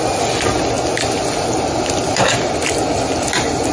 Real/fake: real